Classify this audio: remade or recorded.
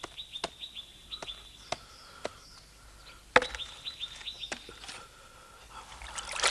recorded